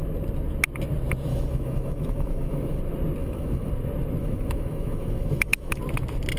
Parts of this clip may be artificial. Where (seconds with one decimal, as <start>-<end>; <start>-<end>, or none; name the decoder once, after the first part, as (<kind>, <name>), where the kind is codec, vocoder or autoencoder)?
1.3-2.8 (autoencoder, DAC-VAE); 3.2-3.7; 4.2-5.8